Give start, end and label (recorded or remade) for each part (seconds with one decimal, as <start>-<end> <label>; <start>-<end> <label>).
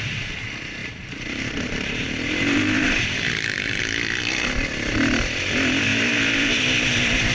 0.0-0.8 recorded; 0.8-3.8 remade; 3.8-5.9 recorded; 5.9-6.6 remade; 6.6-7.3 recorded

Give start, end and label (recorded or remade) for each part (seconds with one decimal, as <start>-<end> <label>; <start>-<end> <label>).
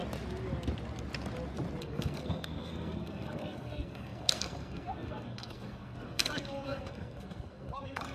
0.0-1.8 recorded; 1.8-8.1 remade